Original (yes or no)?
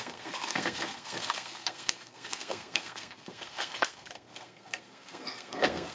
no